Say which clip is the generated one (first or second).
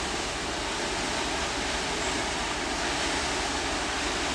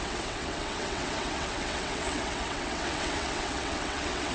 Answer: second